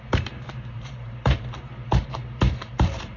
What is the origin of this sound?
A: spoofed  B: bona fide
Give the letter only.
A